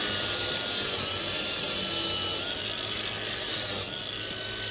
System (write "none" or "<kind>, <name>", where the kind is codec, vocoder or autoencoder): none